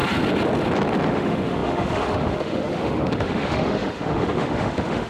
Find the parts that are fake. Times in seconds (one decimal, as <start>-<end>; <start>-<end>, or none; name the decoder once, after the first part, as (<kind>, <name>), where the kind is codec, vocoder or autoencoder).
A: 1.1-5.1 (autoencoder, DAC-VAE)